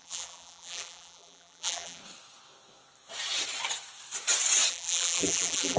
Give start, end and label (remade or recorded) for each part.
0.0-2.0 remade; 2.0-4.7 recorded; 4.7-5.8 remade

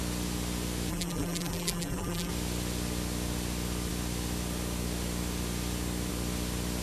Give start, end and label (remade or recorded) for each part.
0.0-0.9 recorded; 0.9-2.3 remade; 2.3-6.8 recorded

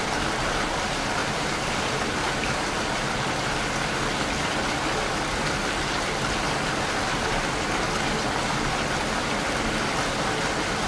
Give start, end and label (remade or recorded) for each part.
0.0-1.2 recorded; 1.2-2.7 remade; 2.7-10.9 recorded

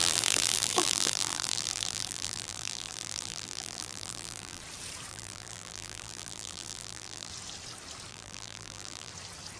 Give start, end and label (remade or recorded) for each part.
0.0-4.6 remade; 4.6-5.1 recorded; 5.1-7.3 remade; 7.3-8.1 recorded; 8.1-9.1 remade; 9.1-9.6 recorded